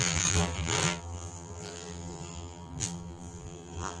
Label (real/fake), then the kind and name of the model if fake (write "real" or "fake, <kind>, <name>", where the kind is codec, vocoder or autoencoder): fake, vocoder, BigVGAN v2